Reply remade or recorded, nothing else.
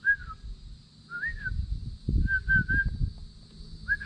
recorded